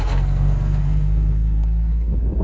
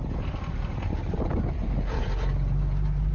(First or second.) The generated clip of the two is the first